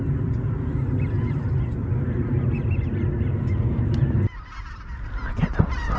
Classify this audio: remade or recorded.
recorded